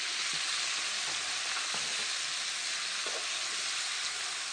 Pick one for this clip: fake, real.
real